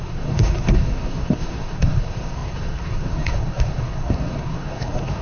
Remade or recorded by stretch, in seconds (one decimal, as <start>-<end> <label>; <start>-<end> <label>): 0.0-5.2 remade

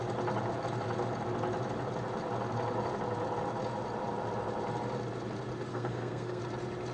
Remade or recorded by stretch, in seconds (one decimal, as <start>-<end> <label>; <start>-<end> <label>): 0.0-5.7 recorded; 5.7-6.4 remade; 6.4-6.9 recorded

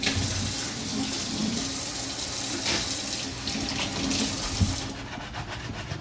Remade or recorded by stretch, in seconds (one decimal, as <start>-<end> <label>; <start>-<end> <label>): 0.0-6.0 recorded

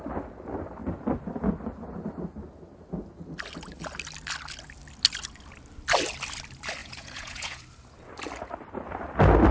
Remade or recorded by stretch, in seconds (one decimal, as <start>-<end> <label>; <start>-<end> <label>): 0.0-6.8 recorded; 6.8-7.6 remade; 7.6-9.5 recorded

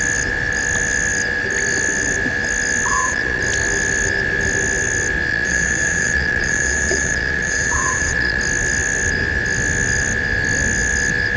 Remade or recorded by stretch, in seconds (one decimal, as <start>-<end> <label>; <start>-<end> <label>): 0.0-2.9 recorded; 2.9-3.4 remade; 3.4-5.3 recorded; 5.3-8.4 remade; 8.4-11.4 recorded